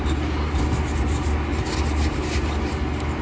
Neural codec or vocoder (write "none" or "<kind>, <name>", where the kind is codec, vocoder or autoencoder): none